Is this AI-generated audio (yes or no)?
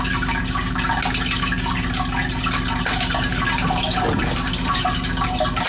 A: no